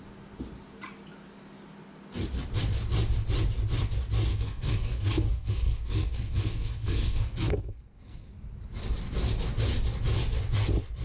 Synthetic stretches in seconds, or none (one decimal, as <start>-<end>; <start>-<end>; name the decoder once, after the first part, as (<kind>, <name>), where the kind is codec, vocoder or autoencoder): 4.3-8.3 (codec, SNAC)